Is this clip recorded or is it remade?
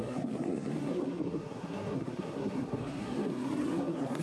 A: remade